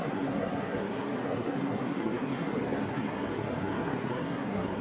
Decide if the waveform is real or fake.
fake